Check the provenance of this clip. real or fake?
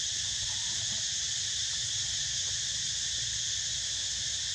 real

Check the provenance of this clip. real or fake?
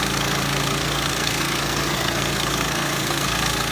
fake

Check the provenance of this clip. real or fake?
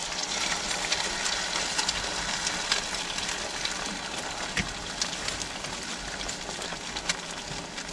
real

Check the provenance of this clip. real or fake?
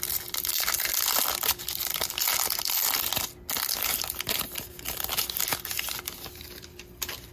real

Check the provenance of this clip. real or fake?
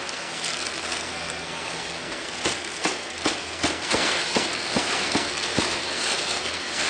fake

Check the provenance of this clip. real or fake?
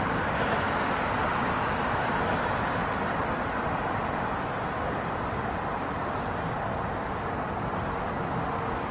real